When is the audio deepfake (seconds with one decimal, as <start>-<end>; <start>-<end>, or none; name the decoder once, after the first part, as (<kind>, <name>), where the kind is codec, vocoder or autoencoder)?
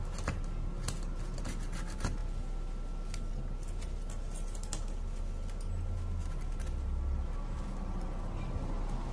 none